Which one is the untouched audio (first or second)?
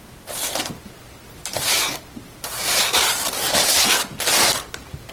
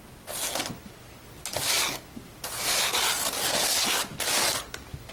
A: second